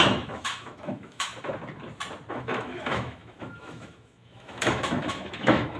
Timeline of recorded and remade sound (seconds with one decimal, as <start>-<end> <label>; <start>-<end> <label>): 0.0-1.3 remade; 1.3-2.3 recorded; 2.3-5.8 remade